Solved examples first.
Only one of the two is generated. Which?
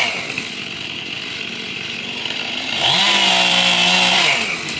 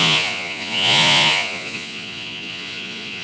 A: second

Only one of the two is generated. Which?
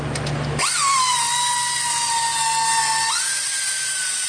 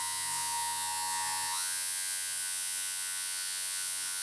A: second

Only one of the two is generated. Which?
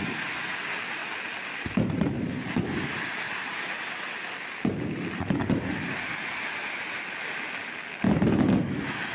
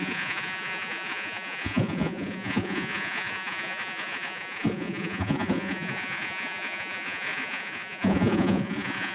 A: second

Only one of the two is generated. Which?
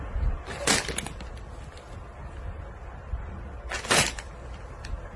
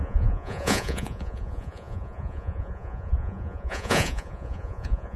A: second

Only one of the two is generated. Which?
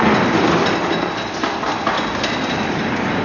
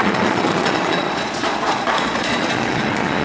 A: second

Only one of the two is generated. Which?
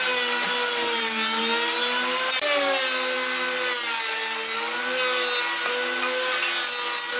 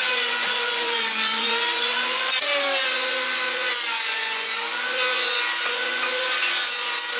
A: second